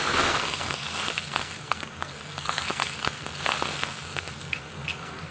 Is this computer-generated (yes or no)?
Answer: yes